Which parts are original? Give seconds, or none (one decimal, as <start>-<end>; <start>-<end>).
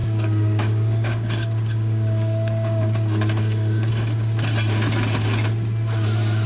3.9-6.5